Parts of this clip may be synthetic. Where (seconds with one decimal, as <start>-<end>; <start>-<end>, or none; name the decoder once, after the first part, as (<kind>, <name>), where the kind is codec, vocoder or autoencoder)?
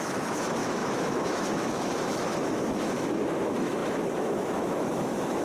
0.0-5.4 (autoencoder, DAC-VAE)